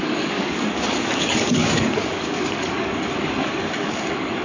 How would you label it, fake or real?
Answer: fake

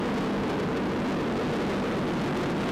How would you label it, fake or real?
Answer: real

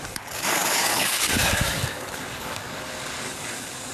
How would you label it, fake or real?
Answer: fake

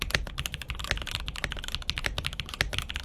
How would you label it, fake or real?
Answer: real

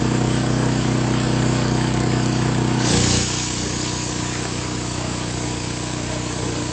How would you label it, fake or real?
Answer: fake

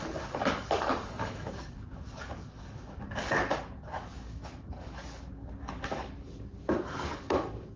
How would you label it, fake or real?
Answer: fake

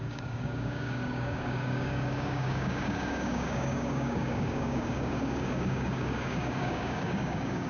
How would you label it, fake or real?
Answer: fake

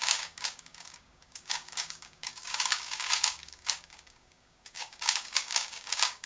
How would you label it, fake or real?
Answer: fake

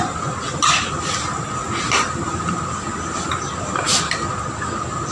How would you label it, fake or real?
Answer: real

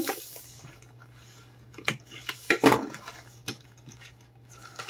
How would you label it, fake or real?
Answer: fake